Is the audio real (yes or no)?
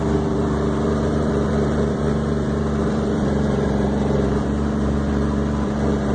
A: no